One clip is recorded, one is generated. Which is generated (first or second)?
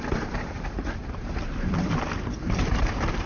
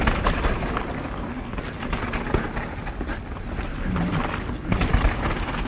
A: first